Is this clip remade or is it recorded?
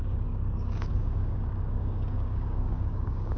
remade